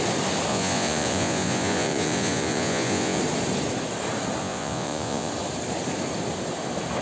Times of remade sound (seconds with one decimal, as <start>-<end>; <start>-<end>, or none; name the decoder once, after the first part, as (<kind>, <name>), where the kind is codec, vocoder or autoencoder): 0.5-3.2 (vocoder, Vocos); 4.4-5.3